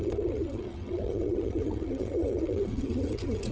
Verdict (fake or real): fake